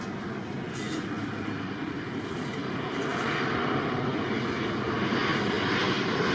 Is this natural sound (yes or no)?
yes